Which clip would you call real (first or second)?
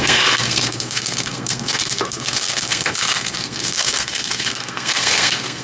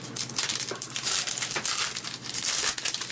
second